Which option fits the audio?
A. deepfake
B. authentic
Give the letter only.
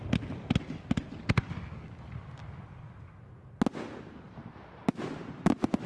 B